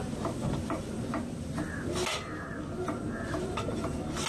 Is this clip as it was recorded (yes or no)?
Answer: yes